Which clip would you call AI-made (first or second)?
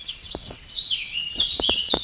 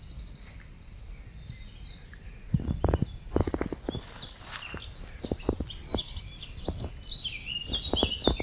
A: first